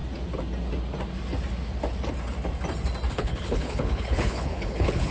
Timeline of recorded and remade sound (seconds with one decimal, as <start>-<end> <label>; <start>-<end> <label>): 0.0-3.1 recorded; 3.1-5.1 remade